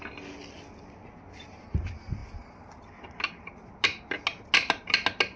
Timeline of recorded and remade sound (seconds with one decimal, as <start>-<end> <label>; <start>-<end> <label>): 0.0-5.4 recorded